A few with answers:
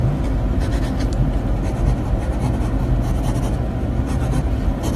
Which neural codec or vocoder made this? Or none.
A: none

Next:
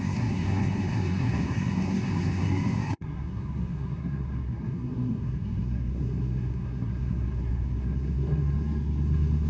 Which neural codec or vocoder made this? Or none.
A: codec, SNAC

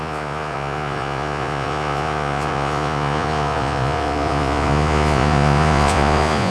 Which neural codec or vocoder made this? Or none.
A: vocoder, Vocos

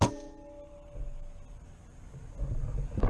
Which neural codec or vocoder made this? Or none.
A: none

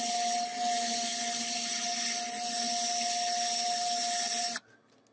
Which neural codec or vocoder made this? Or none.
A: none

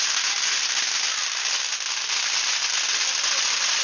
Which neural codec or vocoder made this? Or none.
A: none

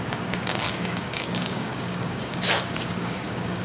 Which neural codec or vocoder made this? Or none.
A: codec, DAC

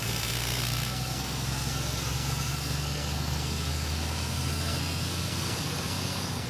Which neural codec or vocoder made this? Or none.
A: codec, SNAC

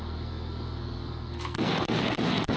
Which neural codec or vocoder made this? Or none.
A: codec, SNAC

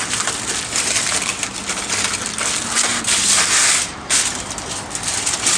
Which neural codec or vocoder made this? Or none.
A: none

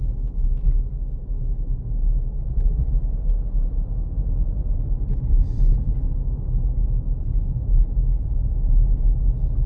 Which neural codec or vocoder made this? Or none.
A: none